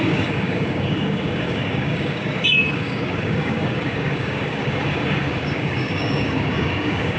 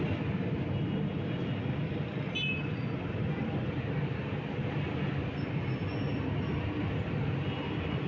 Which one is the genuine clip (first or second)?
second